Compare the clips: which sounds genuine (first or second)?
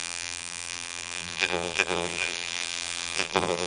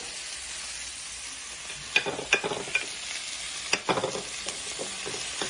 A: second